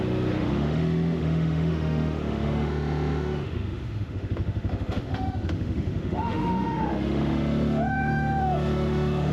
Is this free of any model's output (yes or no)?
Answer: no